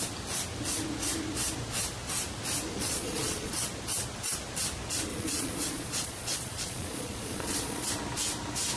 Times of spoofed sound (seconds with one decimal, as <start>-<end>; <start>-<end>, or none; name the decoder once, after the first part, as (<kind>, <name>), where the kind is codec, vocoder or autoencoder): 2.8-3.5 (vocoder, Vocos); 5.1-7.9